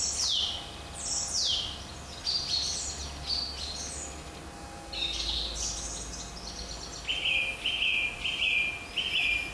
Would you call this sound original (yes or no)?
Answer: yes